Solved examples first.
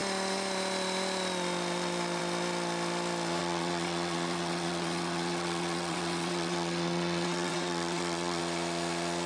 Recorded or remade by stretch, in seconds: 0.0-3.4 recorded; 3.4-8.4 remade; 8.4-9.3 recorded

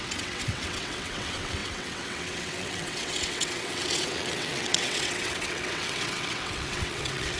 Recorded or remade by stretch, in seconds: 0.0-7.4 remade

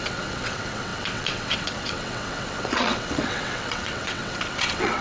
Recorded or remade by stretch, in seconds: 0.0-5.0 remade

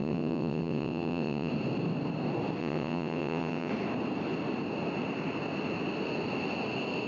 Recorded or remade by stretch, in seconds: 0.0-1.5 remade; 1.5-2.6 recorded; 2.6-3.7 remade; 3.7-7.1 recorded